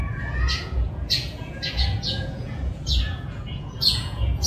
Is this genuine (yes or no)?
no